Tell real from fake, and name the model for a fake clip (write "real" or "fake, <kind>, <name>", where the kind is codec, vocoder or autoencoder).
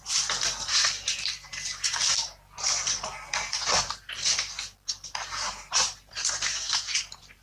real